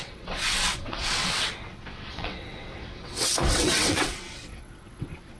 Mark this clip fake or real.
fake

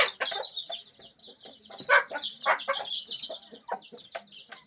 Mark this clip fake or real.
real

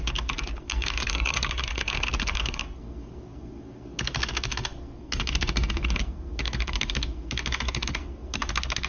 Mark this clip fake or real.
fake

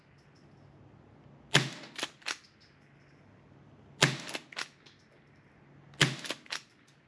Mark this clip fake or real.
real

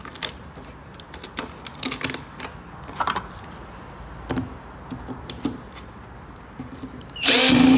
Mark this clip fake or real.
real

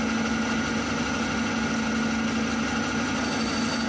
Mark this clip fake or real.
real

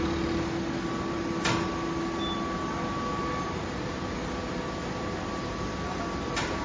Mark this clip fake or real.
real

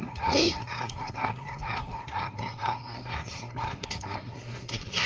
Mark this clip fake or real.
fake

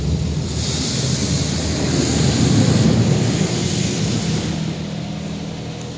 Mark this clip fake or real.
real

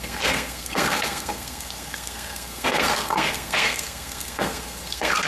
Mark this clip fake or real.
fake